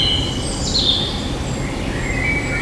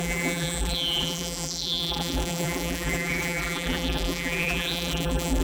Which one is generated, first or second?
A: second